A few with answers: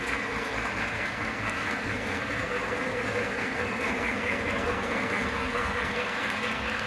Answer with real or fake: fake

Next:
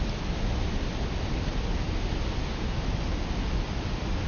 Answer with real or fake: real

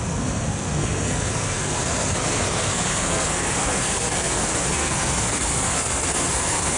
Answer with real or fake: fake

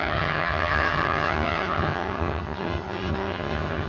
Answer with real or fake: fake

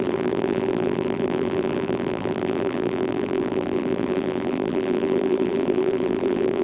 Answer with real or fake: fake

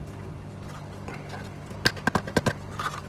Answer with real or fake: real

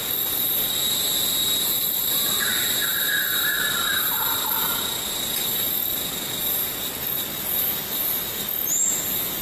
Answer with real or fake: real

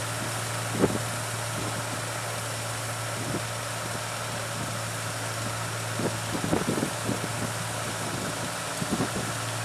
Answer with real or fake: real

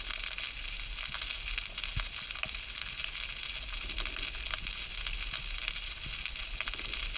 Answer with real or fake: real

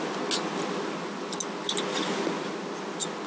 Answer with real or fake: real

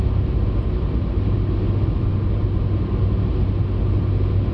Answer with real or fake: real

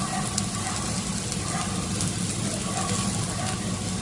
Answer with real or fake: real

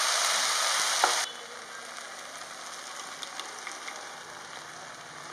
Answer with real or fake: real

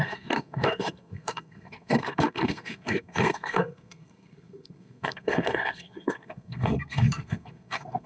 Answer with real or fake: fake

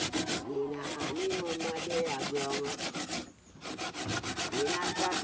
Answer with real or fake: real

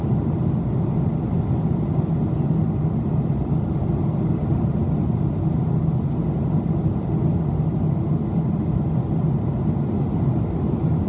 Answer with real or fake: real